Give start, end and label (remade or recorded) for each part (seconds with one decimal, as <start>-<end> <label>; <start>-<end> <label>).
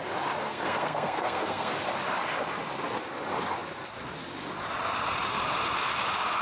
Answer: 0.0-0.4 recorded; 0.4-1.7 remade; 1.7-6.4 recorded